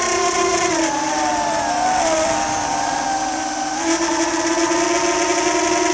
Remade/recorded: recorded